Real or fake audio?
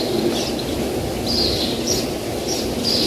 real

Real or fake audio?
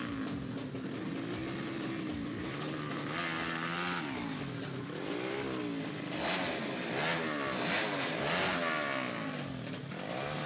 real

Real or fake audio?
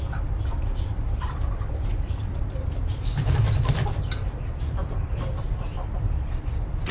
fake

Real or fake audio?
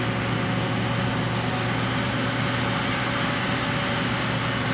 real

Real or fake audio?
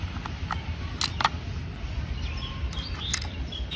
real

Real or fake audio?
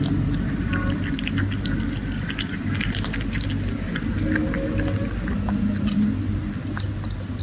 real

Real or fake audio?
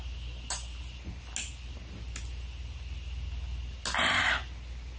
real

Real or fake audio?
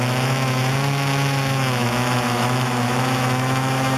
fake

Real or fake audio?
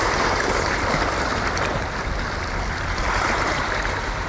fake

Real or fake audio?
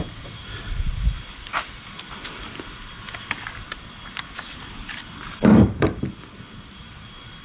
fake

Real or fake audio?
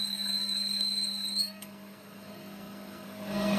fake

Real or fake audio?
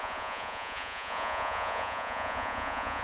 fake